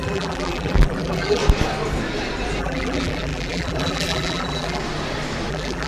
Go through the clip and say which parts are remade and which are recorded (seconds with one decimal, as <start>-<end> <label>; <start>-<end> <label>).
0.0-1.4 remade; 1.4-2.6 recorded; 2.6-4.8 remade; 4.8-5.5 recorded; 5.5-5.9 remade